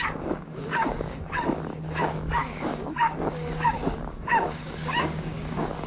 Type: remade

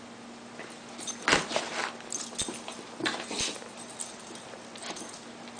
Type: recorded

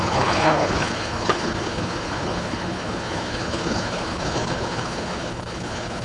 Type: remade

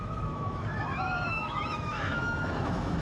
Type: remade